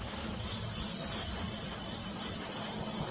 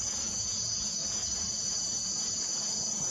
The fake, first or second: second